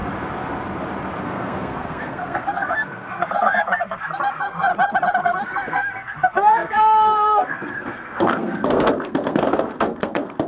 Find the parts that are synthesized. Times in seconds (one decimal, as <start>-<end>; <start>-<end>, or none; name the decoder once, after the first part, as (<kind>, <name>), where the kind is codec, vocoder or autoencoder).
1.2-4.7 (codec, SNAC); 5.2-10.5